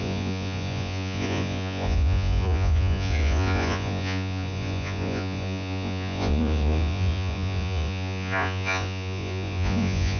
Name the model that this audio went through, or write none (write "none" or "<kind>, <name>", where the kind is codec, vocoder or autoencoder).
vocoder, Vocos